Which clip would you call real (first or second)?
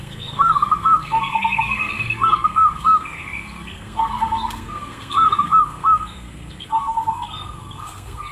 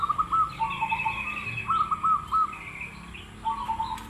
second